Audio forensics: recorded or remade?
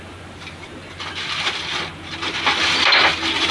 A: recorded